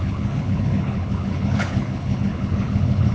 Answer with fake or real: fake